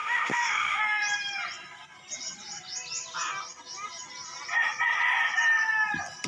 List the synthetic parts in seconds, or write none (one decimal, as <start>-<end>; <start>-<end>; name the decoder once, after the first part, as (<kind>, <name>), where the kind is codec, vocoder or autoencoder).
0.0-0.8 (autoencoder, DAC-VAE)